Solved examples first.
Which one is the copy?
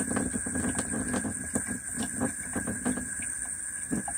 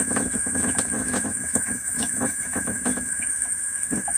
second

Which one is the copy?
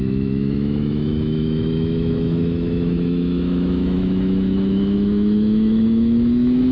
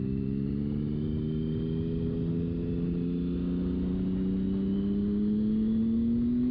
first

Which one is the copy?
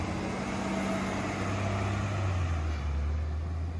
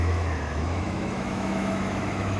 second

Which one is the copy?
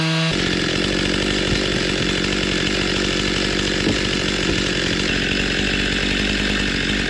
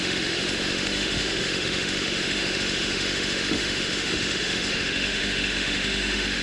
second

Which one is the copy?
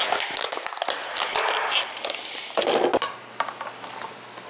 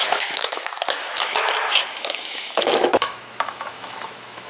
second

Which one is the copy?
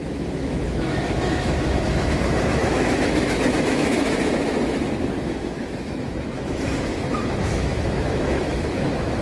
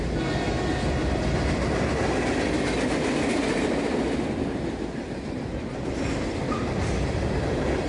first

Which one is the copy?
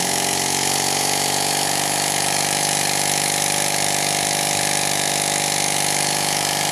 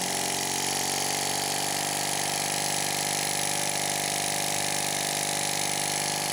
first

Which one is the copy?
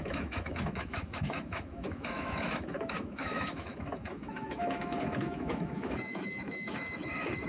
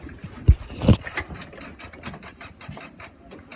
first